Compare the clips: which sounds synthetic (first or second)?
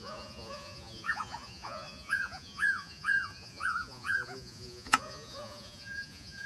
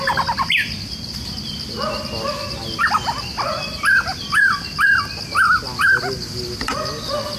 first